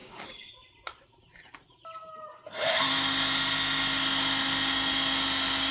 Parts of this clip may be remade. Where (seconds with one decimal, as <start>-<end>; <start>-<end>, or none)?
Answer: 0.0-0.5